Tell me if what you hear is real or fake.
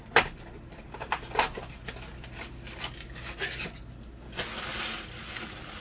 real